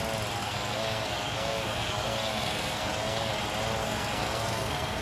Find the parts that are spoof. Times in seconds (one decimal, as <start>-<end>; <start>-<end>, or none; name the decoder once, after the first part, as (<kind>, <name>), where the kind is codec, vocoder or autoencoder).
0.4-3.4 (codec, SNAC); 3.8-5.0